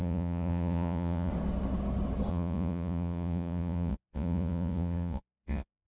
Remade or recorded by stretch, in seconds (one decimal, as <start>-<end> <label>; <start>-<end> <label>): 0.0-1.3 remade; 1.3-2.3 recorded; 2.3-5.9 remade

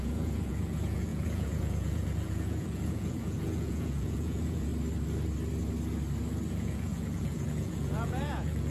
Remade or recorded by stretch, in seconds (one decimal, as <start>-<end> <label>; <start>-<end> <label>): 0.0-4.7 remade; 4.7-6.5 recorded; 6.5-8.7 remade

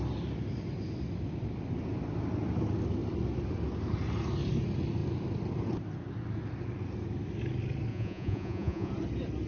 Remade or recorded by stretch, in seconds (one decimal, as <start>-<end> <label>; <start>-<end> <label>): 0.0-7.9 recorded; 7.9-8.9 remade; 8.9-9.5 recorded

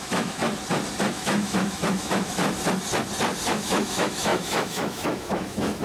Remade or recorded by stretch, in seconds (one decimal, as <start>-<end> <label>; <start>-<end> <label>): 0.0-0.4 remade; 0.4-1.1 recorded; 1.1-2.4 remade; 2.4-3.5 recorded; 3.5-5.8 remade

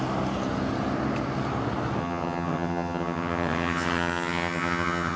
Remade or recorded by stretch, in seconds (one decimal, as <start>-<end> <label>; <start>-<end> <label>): 0.0-2.0 recorded; 2.0-5.2 remade

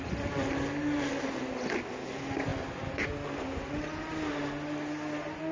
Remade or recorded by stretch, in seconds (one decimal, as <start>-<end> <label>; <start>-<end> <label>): 0.0-5.5 recorded

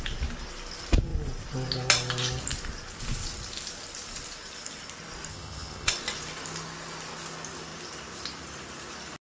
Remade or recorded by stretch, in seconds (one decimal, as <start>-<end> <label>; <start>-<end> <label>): 0.0-5.3 recorded; 5.3-5.9 remade; 5.9-9.3 recorded

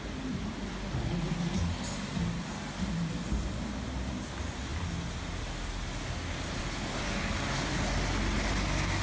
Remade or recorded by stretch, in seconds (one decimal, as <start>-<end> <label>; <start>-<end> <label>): 0.0-9.0 recorded